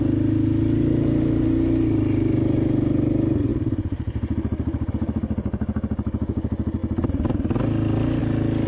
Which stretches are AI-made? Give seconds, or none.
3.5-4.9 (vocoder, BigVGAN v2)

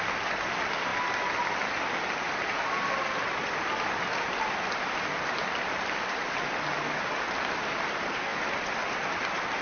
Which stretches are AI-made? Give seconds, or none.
0.0-0.9 (vocoder, BigVGAN v2); 5.8-8.3; 9.1-9.6

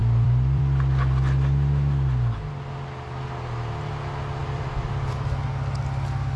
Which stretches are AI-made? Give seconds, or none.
0.0-0.6 (vocoder, BigVGAN v2); 4.4-5.5

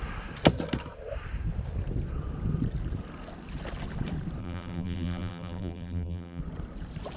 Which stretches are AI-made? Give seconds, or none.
4.4-6.4 (vocoder, BigVGAN v2)

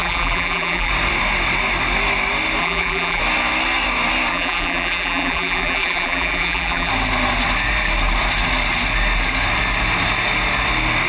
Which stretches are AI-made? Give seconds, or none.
0.0-0.9 (vocoder, BigVGAN v2); 2.6-3.2; 4.3-6.9